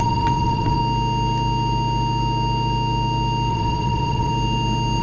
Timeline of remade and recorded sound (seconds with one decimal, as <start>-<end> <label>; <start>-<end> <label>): 0.0-0.8 remade; 0.8-3.5 recorded; 3.5-4.3 remade; 4.3-5.0 recorded